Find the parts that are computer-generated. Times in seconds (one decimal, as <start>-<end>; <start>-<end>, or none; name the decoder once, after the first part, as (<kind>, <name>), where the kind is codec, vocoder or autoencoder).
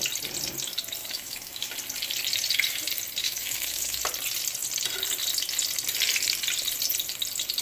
1.0-1.7 (autoencoder, DAC-VAE); 3.2-4.0